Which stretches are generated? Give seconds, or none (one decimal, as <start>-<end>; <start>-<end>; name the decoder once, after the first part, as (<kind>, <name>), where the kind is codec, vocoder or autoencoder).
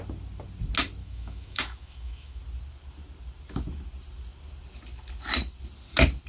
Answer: 1.0-2.4 (autoencoder, DAC-VAE)